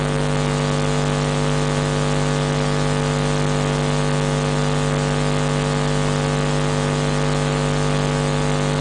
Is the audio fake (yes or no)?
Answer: no